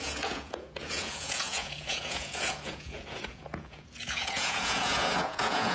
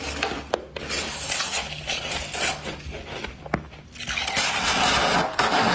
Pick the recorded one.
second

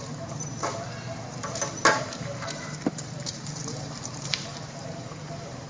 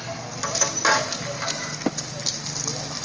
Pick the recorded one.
second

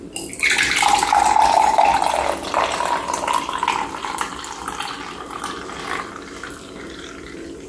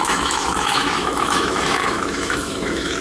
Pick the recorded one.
first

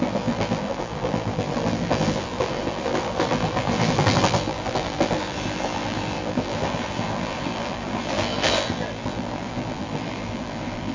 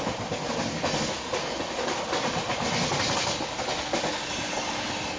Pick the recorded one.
second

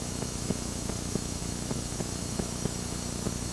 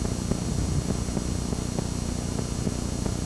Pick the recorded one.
second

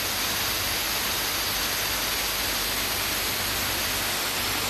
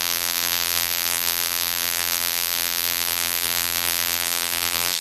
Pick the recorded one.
first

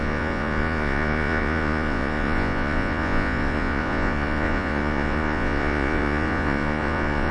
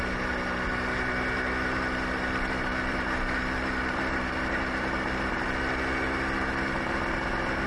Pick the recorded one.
second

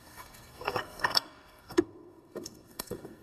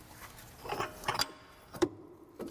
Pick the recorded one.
second